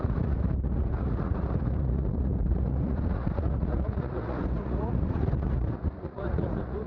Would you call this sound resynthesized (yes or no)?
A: yes